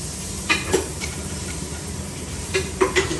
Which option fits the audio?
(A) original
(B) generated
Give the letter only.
B